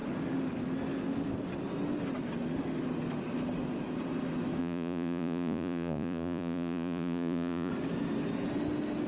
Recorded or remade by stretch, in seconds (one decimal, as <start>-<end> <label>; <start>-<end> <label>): 0.0-4.6 recorded; 4.6-7.7 remade; 7.7-9.1 recorded